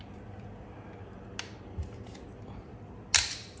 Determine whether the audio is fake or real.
real